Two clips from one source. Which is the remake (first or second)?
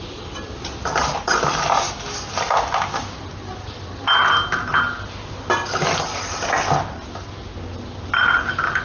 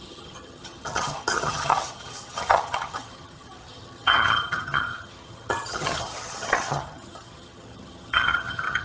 second